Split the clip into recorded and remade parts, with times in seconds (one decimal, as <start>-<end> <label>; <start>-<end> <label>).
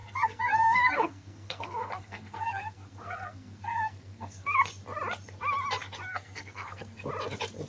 0.0-4.6 remade; 4.6-6.1 recorded; 6.1-7.1 remade; 7.1-7.7 recorded